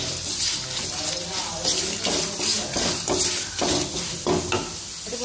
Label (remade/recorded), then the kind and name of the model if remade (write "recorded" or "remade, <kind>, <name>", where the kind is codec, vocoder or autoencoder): recorded